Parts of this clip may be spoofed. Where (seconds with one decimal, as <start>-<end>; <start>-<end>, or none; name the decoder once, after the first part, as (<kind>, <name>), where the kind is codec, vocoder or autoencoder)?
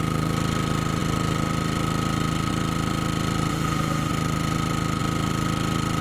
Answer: 3.5-4.1 (autoencoder, DAC-VAE)